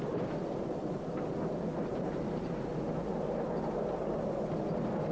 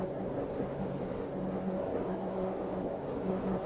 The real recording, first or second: first